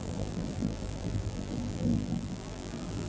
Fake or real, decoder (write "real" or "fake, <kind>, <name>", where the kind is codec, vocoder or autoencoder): fake, vocoder, BigVGAN v2